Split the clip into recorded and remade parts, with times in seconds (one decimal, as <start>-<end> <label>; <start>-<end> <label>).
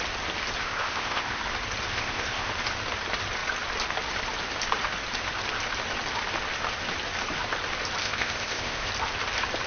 0.0-0.6 recorded; 0.6-1.4 remade; 1.4-1.9 recorded; 1.9-2.5 remade; 2.5-8.0 recorded; 8.0-8.9 remade; 8.9-9.7 recorded